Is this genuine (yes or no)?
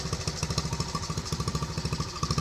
no